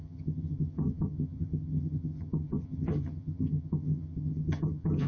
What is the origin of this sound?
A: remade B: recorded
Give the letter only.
A